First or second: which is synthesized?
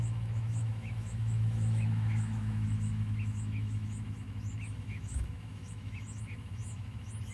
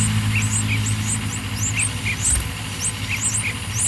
first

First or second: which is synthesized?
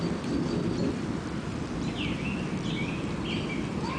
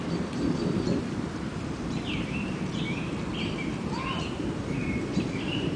second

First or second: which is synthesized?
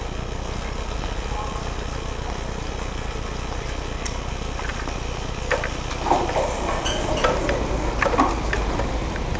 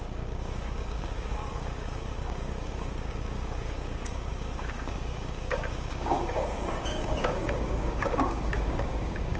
second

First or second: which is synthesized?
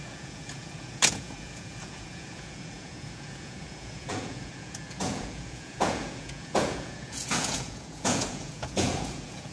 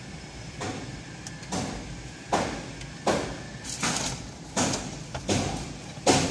first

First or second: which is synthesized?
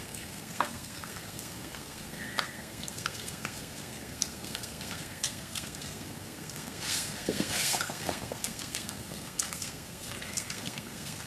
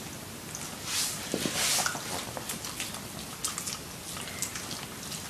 first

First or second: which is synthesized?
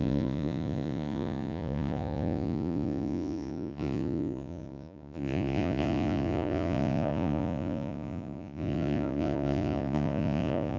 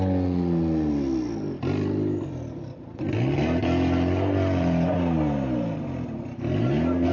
first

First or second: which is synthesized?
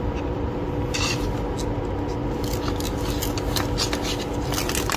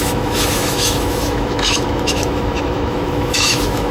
second